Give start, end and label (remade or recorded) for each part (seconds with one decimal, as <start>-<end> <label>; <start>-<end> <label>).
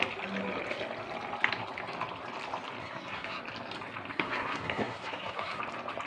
0.0-2.8 recorded; 2.8-3.4 remade; 3.4-4.1 recorded; 4.1-5.6 remade; 5.6-6.1 recorded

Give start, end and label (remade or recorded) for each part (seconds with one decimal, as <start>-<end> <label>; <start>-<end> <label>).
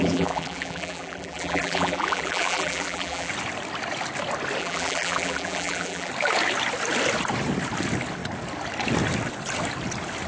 0.0-3.3 remade; 3.3-4.6 recorded; 4.6-6.1 remade; 6.1-10.3 recorded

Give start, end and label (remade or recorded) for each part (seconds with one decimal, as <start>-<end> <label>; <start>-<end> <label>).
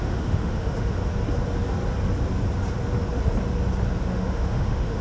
0.0-1.0 remade; 1.0-4.0 recorded; 4.0-5.0 remade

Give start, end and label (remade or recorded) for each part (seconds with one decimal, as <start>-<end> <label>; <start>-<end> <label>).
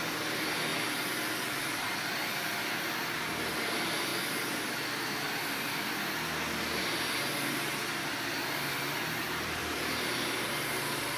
0.0-4.1 recorded; 4.1-5.4 remade; 5.4-9.6 recorded; 9.6-11.2 remade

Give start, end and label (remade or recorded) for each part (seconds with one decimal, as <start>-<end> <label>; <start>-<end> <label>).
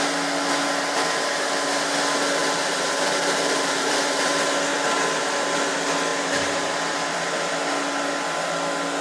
0.0-2.4 recorded; 2.4-4.3 remade; 4.3-6.1 recorded; 6.1-6.9 remade; 6.9-9.0 recorded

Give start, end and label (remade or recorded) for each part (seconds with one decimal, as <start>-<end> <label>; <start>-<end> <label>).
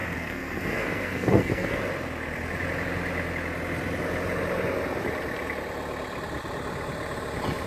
0.0-1.8 remade; 1.8-7.7 recorded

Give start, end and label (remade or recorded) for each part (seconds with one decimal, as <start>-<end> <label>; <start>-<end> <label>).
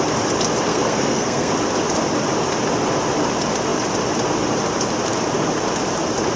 0.0-0.7 recorded; 0.7-1.5 remade; 1.5-6.4 recorded